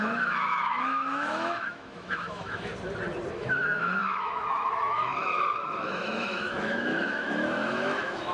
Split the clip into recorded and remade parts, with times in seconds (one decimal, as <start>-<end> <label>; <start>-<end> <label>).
0.0-2.7 remade; 2.7-3.3 recorded; 3.3-8.3 remade